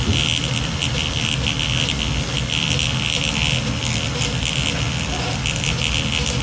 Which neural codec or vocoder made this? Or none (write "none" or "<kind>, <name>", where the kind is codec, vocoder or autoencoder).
none